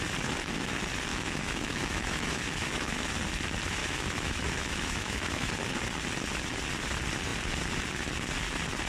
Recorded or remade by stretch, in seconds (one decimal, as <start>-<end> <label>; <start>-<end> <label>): 0.0-1.1 recorded; 1.1-3.1 remade; 3.1-3.8 recorded; 3.8-5.5 remade; 5.5-8.9 recorded